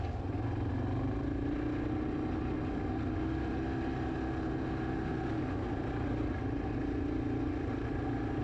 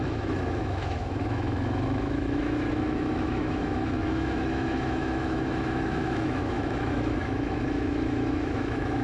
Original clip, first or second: first